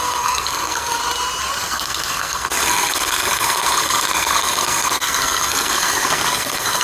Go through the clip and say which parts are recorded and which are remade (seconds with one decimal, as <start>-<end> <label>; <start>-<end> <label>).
0.0-1.0 remade; 1.0-1.6 recorded; 1.6-6.8 remade